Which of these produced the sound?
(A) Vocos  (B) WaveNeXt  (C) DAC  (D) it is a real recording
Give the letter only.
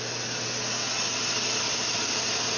D